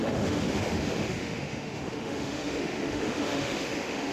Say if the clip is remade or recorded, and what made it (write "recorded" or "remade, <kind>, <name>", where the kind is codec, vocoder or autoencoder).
remade, autoencoder, DAC-VAE